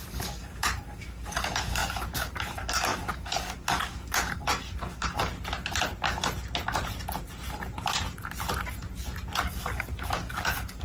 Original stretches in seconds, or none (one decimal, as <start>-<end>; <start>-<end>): 5.3-9.4